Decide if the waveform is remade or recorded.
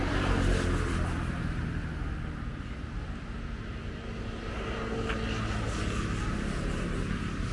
recorded